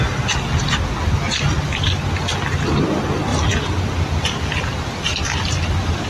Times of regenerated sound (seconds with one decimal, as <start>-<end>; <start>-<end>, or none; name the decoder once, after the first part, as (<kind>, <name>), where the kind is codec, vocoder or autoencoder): none